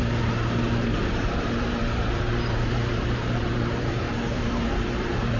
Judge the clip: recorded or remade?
remade